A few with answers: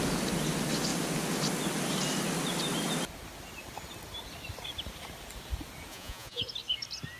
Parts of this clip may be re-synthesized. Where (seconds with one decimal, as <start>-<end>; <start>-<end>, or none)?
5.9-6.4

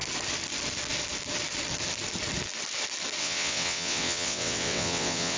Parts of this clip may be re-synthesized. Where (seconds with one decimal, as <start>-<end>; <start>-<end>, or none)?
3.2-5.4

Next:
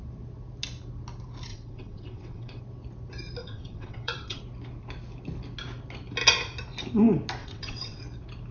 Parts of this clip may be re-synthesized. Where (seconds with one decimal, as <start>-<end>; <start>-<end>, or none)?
1.5-2.6; 3.4-4.4; 7.4-8.0

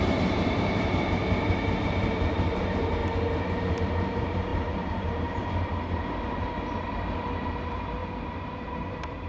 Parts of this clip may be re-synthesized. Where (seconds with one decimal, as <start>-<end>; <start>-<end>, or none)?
0.0-1.2; 1.8-3.0; 3.7-9.3

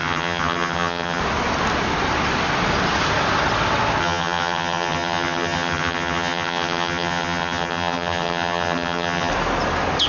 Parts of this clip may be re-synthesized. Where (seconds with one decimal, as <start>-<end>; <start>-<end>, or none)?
0.0-1.2; 4.0-9.3

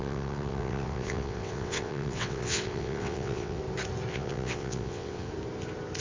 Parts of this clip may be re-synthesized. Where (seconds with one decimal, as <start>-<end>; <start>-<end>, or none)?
0.0-3.6; 4.1-5.3

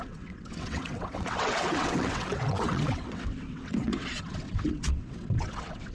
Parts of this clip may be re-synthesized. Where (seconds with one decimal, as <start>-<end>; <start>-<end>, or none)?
0.0-5.9